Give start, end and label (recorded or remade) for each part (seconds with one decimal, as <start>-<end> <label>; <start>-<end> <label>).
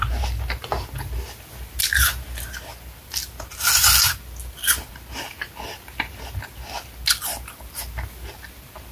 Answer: 0.0-8.9 recorded